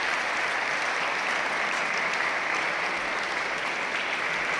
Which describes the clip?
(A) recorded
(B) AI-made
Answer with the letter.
A